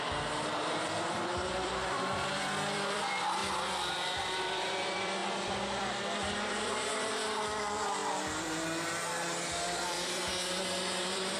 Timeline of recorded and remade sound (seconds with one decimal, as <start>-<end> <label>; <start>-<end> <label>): 0.0-8.0 remade; 8.0-9.5 recorded; 9.5-10.3 remade; 10.3-11.0 recorded; 11.0-11.4 remade